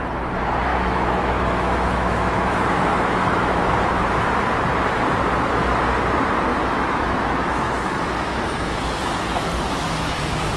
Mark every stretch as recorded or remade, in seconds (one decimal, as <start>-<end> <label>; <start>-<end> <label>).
0.0-0.7 recorded; 0.7-3.7 remade; 3.7-6.5 recorded; 6.5-10.6 remade